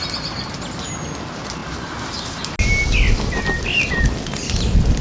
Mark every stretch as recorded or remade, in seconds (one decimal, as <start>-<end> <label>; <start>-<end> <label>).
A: 0.0-5.0 recorded